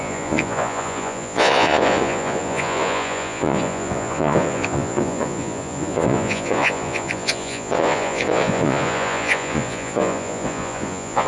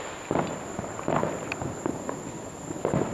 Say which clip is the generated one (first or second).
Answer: first